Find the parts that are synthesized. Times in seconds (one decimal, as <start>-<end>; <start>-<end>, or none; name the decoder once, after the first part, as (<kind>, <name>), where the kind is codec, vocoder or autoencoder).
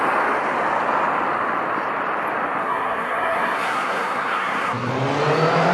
2.6-4.9 (codec, SNAC)